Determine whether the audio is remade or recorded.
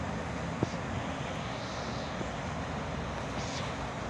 recorded